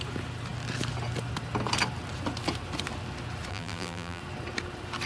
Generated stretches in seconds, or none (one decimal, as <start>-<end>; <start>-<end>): 3.5-4.2